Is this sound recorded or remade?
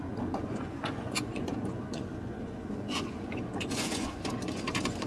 remade